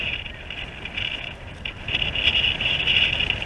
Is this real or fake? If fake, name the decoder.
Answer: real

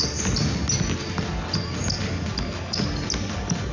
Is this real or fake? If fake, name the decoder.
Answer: real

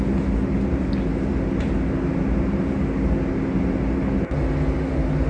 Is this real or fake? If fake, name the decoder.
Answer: real